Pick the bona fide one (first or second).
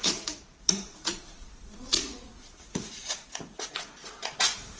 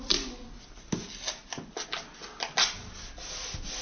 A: second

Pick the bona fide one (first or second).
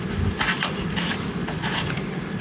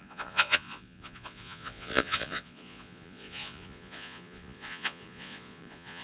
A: first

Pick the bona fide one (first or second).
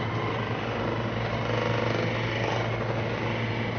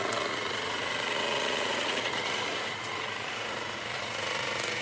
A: first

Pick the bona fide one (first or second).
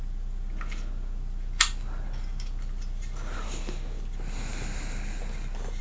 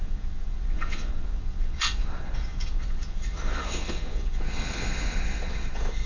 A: first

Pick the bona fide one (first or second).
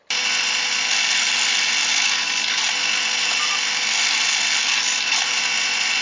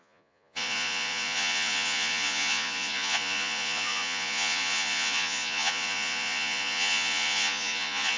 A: first